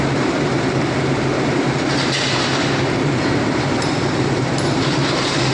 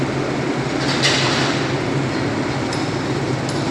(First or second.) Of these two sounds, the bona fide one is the second